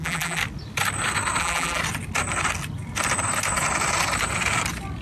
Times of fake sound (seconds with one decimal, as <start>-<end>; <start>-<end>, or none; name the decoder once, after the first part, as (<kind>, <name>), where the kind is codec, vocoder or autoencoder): 0.0-0.4 (vocoder, BigVGAN v2); 1.4-1.8

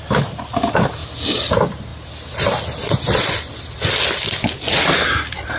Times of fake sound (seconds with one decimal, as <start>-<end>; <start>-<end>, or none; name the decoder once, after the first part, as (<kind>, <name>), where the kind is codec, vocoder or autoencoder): none

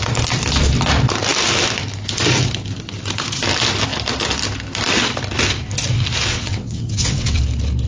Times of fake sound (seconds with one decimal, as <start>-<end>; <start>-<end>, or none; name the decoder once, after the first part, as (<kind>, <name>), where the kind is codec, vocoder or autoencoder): 6.3-7.4 (vocoder, WaveNeXt)

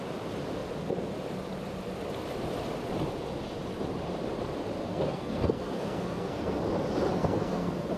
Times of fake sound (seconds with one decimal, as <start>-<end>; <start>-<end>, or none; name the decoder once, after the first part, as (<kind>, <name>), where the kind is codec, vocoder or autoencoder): 4.8-6.6 (codec, SNAC); 7.1-8.0

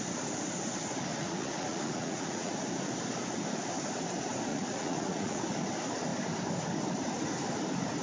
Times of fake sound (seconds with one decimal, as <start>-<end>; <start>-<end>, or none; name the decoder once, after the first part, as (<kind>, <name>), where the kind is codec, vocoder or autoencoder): 1.1-2.5 (vocoder, Vocos); 4.5-5.4